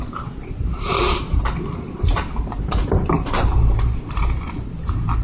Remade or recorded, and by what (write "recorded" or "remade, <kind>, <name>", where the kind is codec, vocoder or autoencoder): remade, vocoder, BigVGAN v2